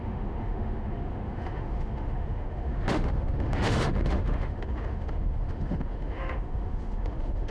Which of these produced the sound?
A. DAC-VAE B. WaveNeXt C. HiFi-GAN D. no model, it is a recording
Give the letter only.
A